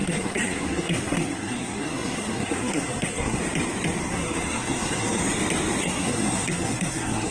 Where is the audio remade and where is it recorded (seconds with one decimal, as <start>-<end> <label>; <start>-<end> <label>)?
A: 0.0-3.4 remade; 3.4-4.0 recorded; 4.0-5.2 remade; 5.2-5.8 recorded; 5.8-7.3 remade